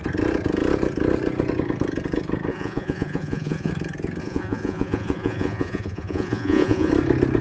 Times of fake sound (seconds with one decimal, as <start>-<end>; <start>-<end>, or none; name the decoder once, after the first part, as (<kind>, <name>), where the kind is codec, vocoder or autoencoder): 2.5-3.7 (vocoder, Vocos); 4.2-6.9